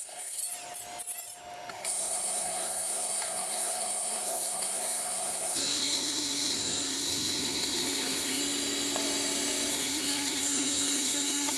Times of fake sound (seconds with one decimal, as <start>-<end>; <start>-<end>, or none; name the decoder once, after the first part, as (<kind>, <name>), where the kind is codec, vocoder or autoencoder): 0.0-0.4 (codec, SNAC); 1.7-8.4; 9.7-11.6